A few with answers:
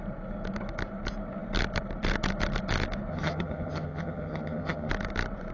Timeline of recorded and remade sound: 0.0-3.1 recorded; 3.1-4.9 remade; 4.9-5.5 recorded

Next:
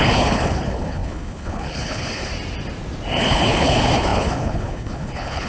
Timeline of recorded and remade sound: 0.0-2.3 remade; 2.3-3.2 recorded; 3.2-5.5 remade